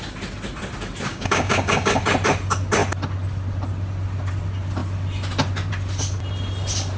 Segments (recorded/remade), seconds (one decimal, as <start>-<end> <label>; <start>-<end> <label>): 0.0-1.1 recorded; 1.1-2.0 remade; 2.0-7.0 recorded